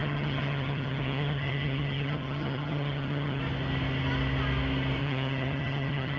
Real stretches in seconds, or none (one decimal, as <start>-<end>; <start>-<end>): 3.4-5.0